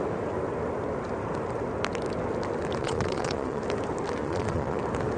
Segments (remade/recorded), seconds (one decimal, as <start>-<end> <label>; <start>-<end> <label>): 0.0-2.8 recorded; 2.8-3.6 remade; 3.6-4.2 recorded; 4.2-4.8 remade; 4.8-5.2 recorded